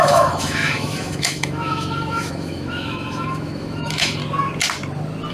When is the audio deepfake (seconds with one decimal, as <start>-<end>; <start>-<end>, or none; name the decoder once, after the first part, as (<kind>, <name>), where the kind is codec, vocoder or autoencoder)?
0.0-4.2 (autoencoder, DAC-VAE)